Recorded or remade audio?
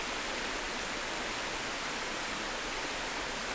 recorded